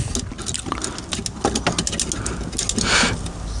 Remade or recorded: recorded